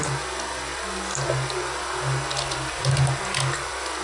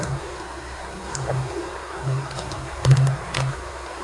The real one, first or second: first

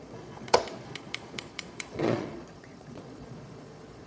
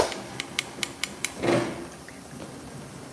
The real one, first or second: second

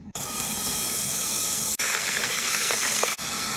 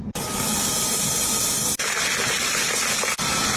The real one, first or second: second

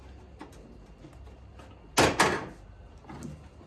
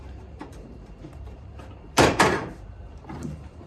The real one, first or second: first